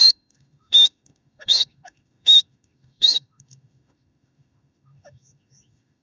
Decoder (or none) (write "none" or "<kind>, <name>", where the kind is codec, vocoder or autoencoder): autoencoder, DAC-VAE